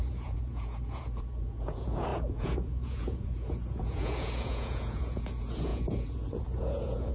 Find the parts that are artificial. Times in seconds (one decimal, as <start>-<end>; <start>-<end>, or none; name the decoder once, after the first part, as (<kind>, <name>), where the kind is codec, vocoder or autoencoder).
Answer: 0.0-7.1 (vocoder, Vocos)